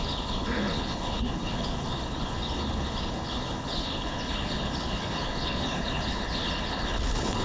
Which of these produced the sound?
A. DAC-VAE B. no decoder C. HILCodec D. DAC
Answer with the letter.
C